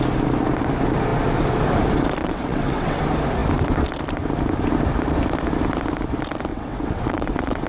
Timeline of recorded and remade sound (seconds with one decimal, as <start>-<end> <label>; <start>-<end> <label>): 0.0-2.2 recorded; 2.2-3.0 remade; 3.0-6.5 recorded; 6.5-7.7 remade